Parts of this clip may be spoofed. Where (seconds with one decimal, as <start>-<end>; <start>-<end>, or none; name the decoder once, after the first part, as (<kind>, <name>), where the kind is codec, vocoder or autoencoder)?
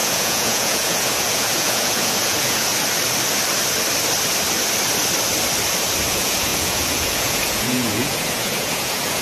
0.0-2.7 (vocoder, Vocos); 6.1-9.2